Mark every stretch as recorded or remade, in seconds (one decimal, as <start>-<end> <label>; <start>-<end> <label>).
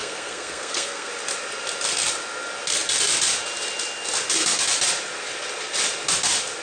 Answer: 0.0-1.1 remade; 1.1-6.6 recorded